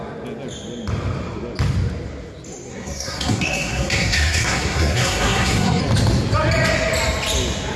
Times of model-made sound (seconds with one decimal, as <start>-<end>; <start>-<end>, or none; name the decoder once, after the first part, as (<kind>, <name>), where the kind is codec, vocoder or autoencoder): 2.7-5.8 (codec, SNAC)